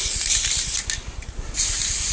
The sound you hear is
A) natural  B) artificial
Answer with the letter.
B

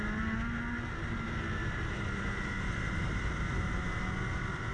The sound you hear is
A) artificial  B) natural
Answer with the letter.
B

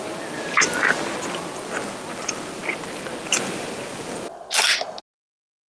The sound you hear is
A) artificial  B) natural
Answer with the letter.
B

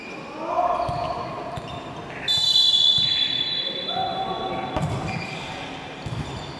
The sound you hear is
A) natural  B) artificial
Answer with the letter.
A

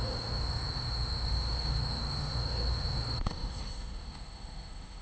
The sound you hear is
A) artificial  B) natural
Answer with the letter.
A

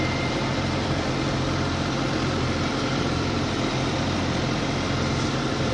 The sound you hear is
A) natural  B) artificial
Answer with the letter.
B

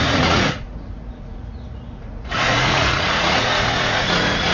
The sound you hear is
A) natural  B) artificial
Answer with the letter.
B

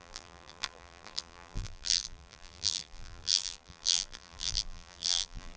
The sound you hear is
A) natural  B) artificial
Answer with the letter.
B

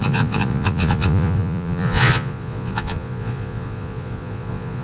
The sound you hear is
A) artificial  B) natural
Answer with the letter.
A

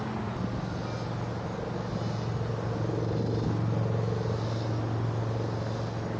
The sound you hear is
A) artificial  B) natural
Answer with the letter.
B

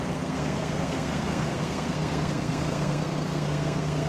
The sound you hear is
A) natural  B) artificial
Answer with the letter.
B